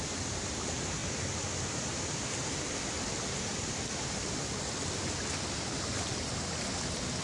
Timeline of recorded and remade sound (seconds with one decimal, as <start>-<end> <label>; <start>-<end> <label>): 0.0-1.0 recorded; 1.0-3.1 remade; 3.1-3.5 recorded; 3.5-6.7 remade; 6.7-7.2 recorded